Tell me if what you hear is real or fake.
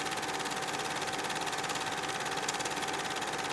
real